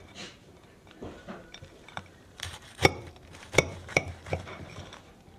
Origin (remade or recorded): remade